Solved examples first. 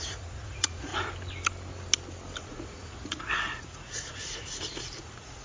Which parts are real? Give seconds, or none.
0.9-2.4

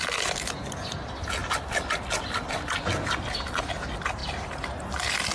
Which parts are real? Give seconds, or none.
0.0-5.3

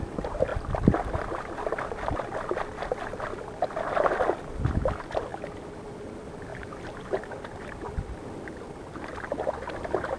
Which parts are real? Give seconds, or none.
0.0-10.2

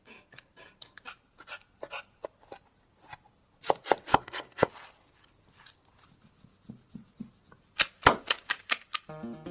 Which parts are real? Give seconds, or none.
0.0-4.1; 4.7-9.5

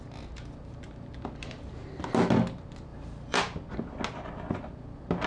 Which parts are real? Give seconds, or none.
0.0-2.9; 3.4-5.3

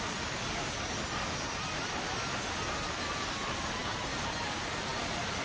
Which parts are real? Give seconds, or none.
0.0-5.4

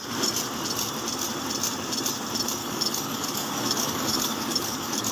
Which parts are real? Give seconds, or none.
0.0-2.6